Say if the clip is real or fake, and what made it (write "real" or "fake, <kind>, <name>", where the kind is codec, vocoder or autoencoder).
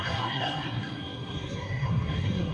fake, codec, SNAC